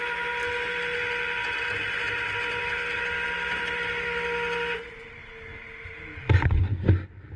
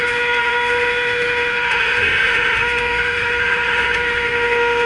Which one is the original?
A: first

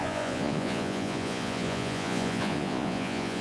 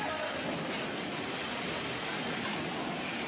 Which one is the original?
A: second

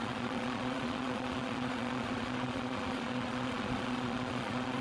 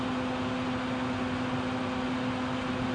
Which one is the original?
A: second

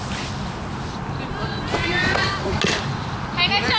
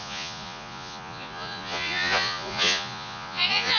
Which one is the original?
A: first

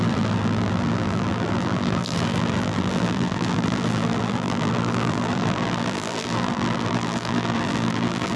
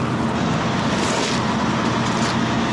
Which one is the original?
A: second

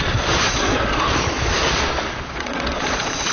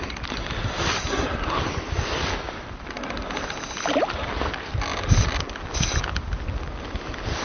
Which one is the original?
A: second